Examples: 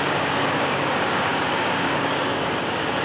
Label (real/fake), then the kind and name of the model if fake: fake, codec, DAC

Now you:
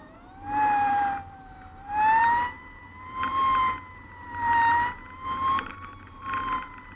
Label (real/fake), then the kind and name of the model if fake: fake, vocoder, BigVGAN v2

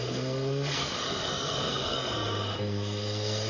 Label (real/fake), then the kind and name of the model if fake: fake, codec, SNAC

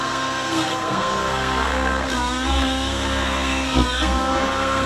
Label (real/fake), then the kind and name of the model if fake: fake, codec, SNAC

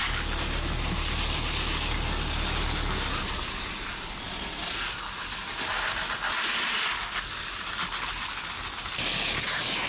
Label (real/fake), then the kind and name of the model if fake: real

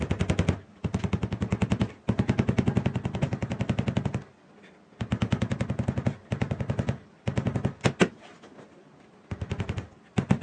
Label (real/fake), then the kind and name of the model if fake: real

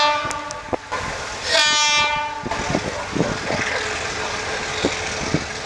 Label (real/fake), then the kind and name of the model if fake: real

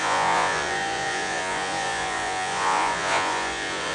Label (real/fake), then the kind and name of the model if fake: fake, vocoder, Vocos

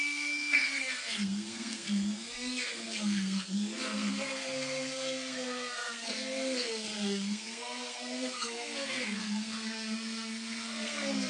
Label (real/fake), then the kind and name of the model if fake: fake, codec, SNAC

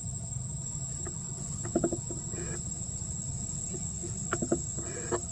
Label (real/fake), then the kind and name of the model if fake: real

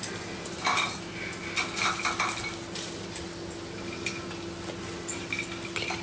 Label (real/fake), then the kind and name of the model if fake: real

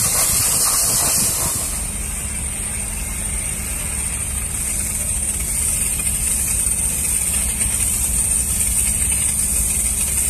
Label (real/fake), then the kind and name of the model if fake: real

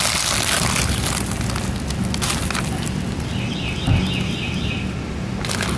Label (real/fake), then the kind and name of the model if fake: real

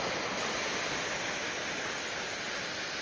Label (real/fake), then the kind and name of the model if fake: real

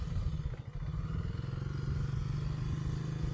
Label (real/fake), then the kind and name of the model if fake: real